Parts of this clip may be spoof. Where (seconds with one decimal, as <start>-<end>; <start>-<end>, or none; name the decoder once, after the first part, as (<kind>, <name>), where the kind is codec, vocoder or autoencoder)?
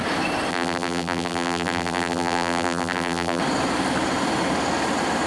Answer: 0.5-3.4 (vocoder, BigVGAN v2)